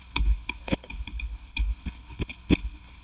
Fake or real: fake